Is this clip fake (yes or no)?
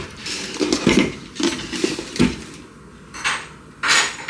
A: no